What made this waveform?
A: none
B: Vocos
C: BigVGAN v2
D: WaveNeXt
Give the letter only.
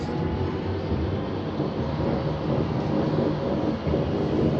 A